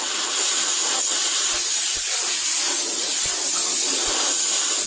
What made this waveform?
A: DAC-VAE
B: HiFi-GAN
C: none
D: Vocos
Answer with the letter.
C